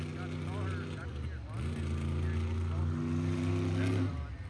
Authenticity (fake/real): real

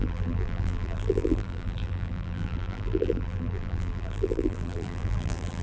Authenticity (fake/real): fake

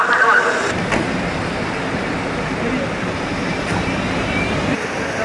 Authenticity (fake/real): fake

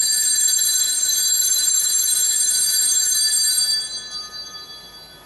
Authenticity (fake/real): fake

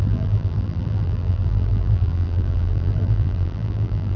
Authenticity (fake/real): fake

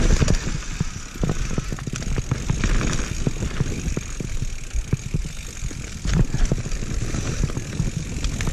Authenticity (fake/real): real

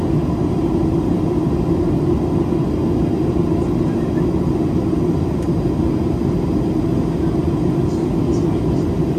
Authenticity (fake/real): real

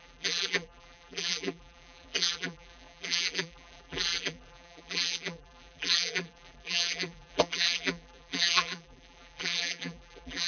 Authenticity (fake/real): fake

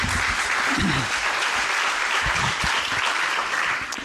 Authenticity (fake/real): real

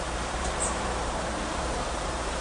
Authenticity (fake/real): fake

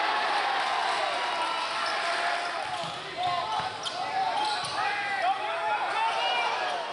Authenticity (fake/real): real